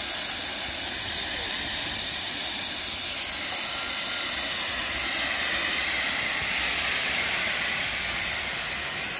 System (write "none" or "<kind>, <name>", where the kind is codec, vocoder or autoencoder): none